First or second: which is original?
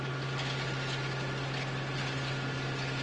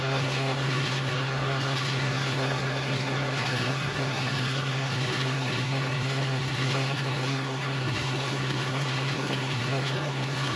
first